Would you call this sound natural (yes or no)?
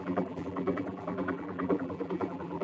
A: no